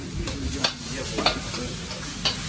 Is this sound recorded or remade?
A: recorded